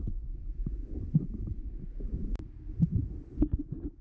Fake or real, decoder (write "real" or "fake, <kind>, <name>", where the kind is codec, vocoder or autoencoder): real